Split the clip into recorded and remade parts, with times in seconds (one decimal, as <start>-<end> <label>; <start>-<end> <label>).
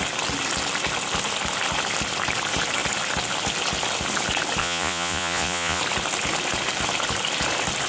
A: 0.0-4.6 recorded; 4.6-5.8 remade; 5.8-7.9 recorded